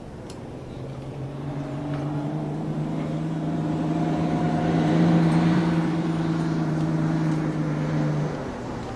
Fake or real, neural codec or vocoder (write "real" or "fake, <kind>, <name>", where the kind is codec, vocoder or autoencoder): fake, vocoder, BigVGAN v2